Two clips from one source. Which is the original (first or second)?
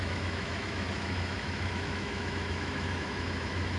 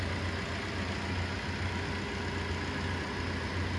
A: second